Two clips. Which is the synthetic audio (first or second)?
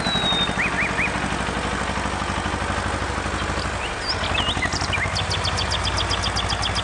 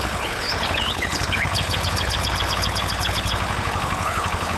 second